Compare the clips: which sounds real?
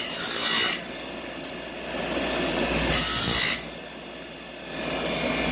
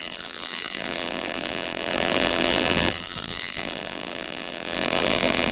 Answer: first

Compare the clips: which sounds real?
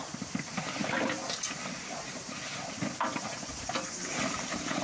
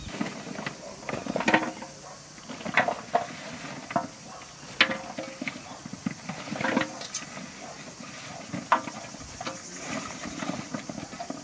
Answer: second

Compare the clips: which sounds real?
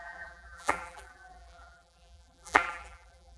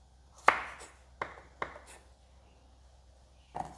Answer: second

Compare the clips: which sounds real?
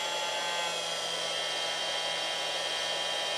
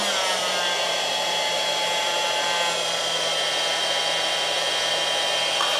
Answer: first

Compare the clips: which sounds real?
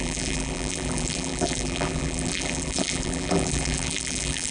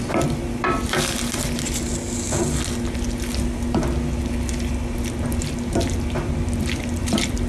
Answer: second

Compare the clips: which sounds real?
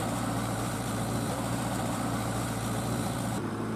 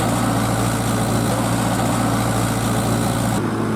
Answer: second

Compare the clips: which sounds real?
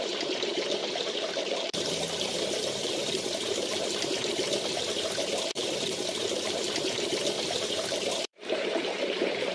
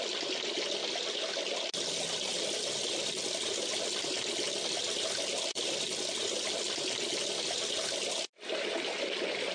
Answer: second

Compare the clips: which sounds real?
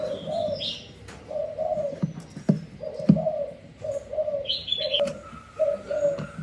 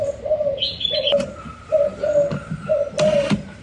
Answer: first